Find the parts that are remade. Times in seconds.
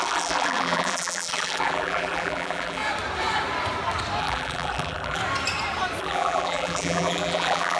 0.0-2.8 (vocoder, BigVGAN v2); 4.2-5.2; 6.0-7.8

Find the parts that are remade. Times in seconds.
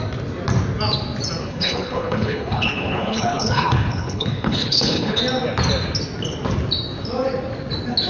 1.4-5.2 (codec, HILCodec)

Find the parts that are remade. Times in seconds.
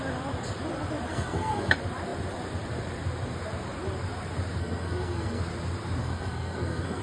1.1-1.7 (codec, SNAC); 4.6-5.4; 6.0-7.0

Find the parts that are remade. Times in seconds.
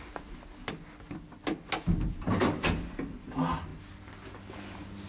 none